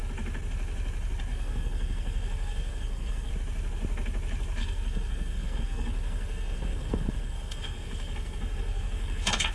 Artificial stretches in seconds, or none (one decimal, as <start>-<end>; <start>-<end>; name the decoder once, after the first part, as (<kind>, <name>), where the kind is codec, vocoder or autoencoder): 1.3-3.3 (codec, SNAC); 4.6-9.5